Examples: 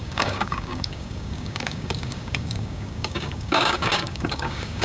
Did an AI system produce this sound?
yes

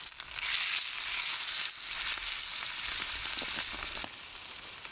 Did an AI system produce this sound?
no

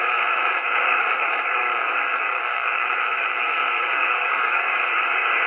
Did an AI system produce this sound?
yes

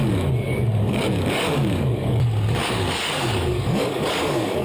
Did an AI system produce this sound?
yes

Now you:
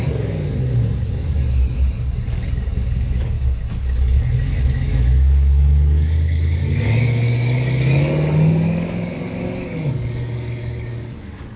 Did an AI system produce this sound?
yes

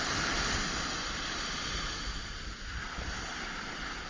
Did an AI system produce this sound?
no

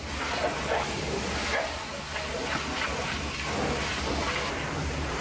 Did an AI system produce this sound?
no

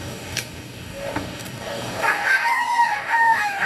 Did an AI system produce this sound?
yes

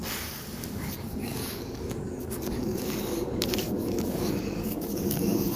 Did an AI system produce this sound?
yes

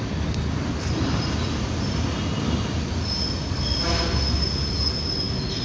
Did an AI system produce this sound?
no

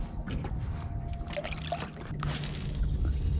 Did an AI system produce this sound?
no